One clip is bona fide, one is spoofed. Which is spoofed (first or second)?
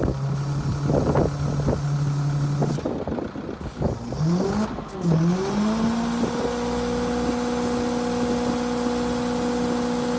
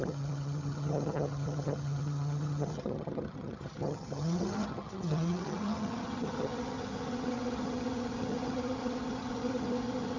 second